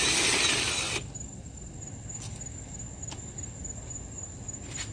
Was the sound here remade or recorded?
recorded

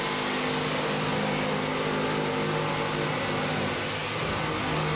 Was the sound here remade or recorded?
recorded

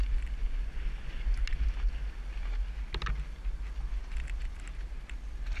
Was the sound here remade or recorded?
recorded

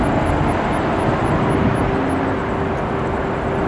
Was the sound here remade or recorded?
recorded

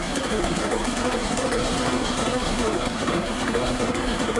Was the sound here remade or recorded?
remade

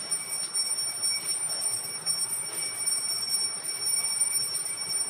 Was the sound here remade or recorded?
recorded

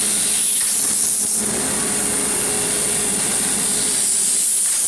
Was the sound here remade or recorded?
recorded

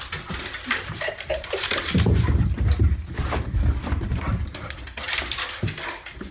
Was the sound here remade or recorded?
remade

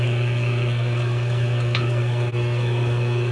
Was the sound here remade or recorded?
remade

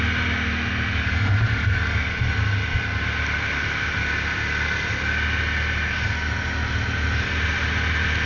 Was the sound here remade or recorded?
recorded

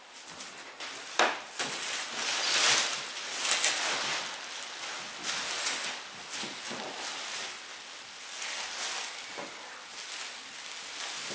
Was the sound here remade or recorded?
recorded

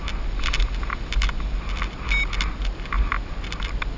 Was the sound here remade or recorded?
recorded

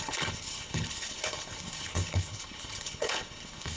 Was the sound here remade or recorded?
remade